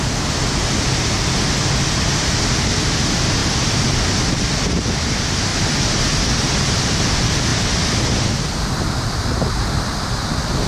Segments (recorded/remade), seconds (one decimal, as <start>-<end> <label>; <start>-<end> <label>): 0.0-5.5 recorded; 5.5-6.0 remade; 6.0-7.5 recorded; 7.5-9.3 remade; 9.3-10.7 recorded